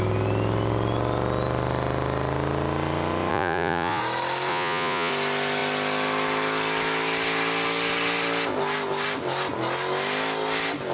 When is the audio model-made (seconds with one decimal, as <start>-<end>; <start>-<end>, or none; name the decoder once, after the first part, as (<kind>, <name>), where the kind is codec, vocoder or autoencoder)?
3.3-4.0 (vocoder, Vocos); 4.5-5.1